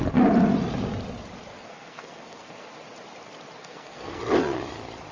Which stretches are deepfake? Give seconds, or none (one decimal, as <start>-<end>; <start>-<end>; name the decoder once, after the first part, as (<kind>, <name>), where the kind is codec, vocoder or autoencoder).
1.5-2.7 (codec, SNAC); 3.6-4.2